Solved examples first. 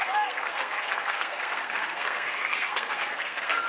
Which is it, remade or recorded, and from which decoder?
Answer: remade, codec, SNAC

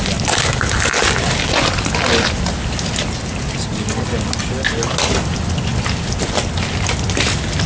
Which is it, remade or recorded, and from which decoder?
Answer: recorded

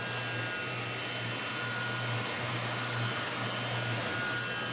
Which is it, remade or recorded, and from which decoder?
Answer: recorded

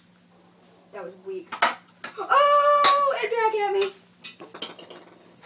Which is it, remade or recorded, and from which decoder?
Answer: recorded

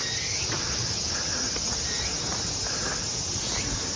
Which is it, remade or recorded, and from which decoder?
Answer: recorded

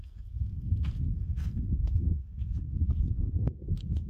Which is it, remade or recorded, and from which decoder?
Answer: remade, codec, SNAC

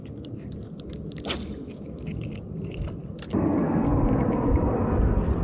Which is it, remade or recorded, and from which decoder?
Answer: recorded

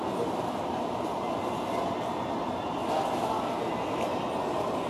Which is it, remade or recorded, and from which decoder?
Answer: recorded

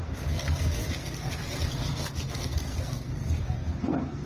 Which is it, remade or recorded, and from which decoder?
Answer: remade, codec, SNAC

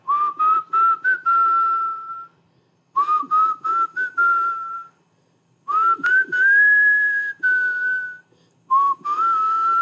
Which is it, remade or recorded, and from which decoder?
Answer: recorded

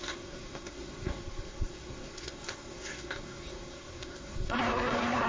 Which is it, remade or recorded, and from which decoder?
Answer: remade, codec, SNAC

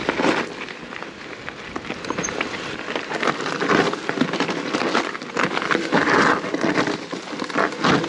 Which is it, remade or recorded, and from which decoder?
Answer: recorded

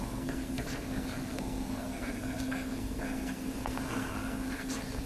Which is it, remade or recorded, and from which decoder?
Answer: remade, codec, SNAC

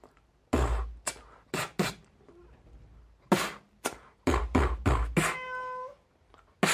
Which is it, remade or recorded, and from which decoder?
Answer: recorded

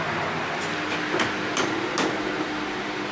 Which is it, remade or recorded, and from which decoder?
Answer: recorded